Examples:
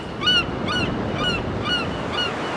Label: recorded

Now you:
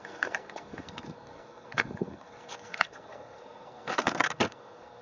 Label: remade